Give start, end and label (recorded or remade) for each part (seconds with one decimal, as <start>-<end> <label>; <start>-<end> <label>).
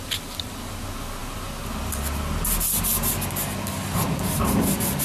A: 0.0-5.0 recorded